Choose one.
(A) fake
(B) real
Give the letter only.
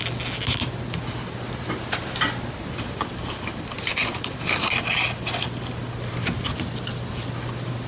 B